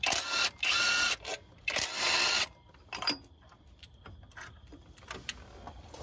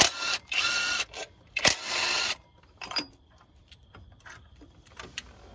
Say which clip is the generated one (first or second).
second